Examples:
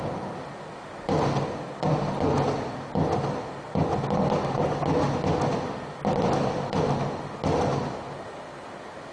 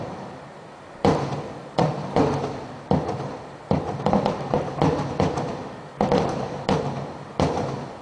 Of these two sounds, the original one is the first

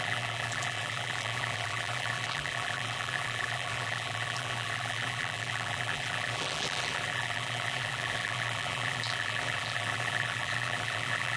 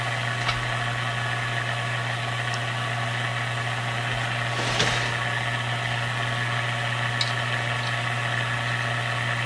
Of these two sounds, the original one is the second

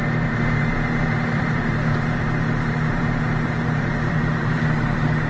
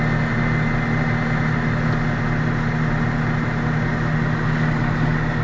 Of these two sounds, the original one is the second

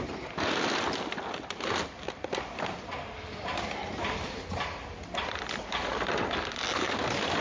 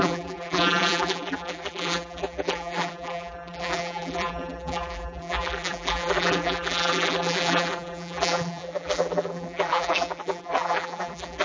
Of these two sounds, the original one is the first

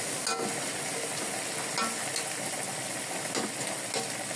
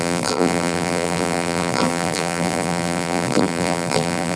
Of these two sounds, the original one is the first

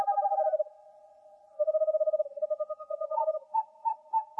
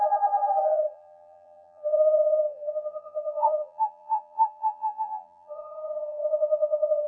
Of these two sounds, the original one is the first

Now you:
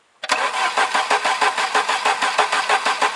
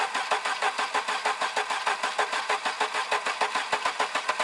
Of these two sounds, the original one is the first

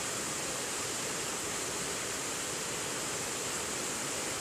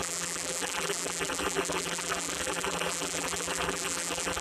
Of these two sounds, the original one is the first